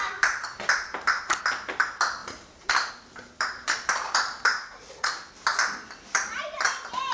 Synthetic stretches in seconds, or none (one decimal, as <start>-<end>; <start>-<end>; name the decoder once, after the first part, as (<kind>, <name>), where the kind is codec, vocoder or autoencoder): 4.5-5.1 (vocoder, Vocos)